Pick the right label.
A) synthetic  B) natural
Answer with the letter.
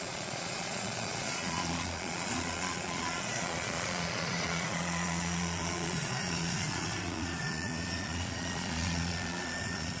A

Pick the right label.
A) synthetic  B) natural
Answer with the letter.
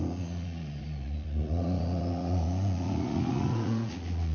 A